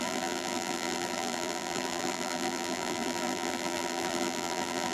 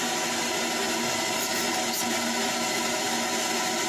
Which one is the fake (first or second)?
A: first